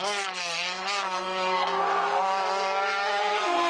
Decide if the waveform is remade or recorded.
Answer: remade